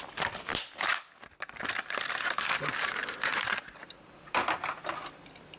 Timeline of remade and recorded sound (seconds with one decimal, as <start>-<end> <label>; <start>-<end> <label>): 0.0-0.9 remade; 0.9-1.4 recorded; 1.4-3.0 remade; 3.0-3.5 recorded; 3.5-5.6 remade